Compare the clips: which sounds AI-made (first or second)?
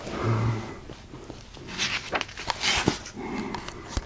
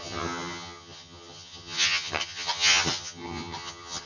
second